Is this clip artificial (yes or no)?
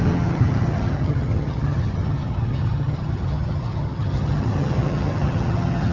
yes